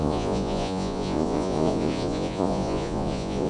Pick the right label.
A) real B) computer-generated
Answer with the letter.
B